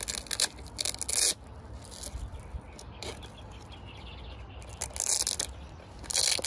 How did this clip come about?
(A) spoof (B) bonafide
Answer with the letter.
B